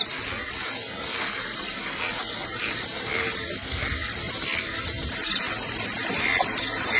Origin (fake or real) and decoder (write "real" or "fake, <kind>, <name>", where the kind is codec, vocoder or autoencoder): real